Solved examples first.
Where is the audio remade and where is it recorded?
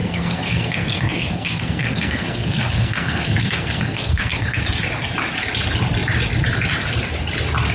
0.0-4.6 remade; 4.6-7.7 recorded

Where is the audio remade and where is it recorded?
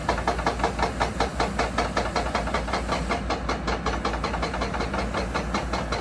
0.0-6.0 recorded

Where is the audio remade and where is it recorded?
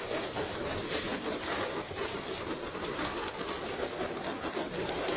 0.0-5.2 recorded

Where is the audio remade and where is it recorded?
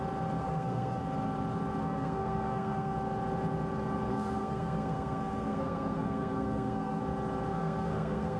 0.0-0.4 recorded; 0.4-1.0 remade; 1.0-1.8 recorded; 1.8-2.9 remade; 2.9-4.1 recorded; 4.1-7.0 remade; 7.0-7.5 recorded; 7.5-8.4 remade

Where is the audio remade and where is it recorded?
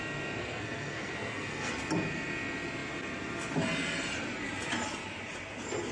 0.0-0.4 recorded; 0.4-1.7 remade; 1.7-5.9 recorded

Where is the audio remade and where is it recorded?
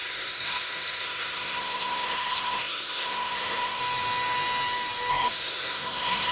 0.0-3.8 remade; 3.8-5.1 recorded; 5.1-6.3 remade